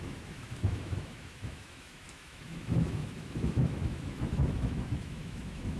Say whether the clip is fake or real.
fake